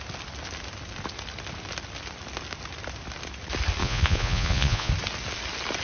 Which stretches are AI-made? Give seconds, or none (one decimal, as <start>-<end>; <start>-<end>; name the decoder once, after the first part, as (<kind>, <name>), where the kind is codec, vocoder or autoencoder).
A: 3.8-4.9 (vocoder, Vocos)